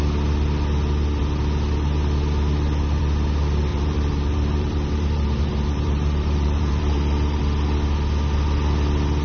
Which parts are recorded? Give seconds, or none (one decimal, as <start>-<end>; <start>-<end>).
0.0-3.7; 7.4-9.2